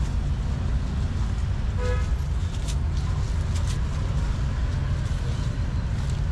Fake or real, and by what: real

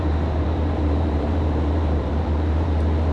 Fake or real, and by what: fake, vocoder, BigVGAN v2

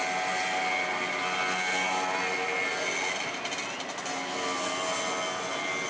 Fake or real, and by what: real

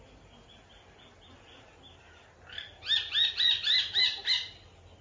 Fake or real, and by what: real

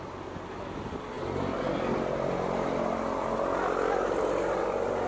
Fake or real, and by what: real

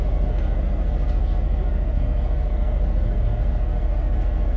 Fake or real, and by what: fake, codec, SNAC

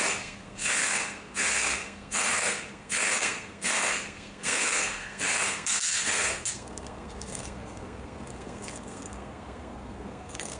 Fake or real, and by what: fake, codec, SNAC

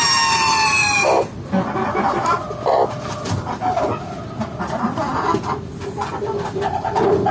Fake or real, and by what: real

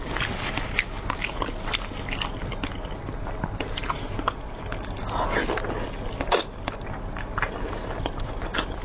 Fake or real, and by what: real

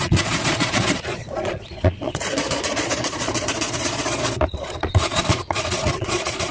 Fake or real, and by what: fake, vocoder, Vocos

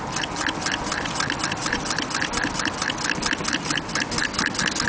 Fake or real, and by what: real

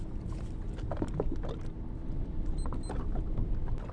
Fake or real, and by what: real